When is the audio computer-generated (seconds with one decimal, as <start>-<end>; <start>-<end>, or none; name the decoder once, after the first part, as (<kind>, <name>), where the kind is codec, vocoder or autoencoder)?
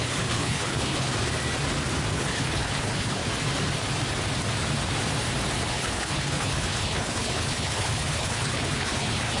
0.0-1.1 (codec, HILCodec); 2.1-3.2; 5.7-9.4